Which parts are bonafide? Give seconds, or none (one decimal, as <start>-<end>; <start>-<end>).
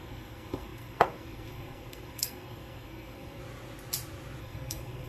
3.4-4.4